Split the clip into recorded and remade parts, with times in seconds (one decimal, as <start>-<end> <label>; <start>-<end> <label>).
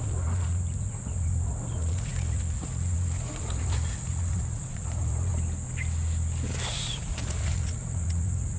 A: 0.0-5.3 remade; 5.3-6.7 recorded; 6.7-8.6 remade